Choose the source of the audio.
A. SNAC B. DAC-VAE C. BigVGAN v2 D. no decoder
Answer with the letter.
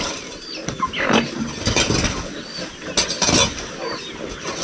D